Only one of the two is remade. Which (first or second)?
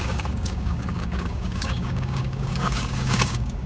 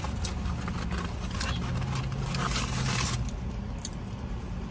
first